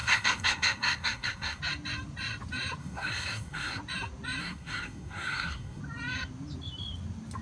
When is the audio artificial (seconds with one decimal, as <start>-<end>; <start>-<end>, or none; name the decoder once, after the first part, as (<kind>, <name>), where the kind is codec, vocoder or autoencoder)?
0.0-1.6 (codec, SNAC); 2.8-3.8; 4.4-5.8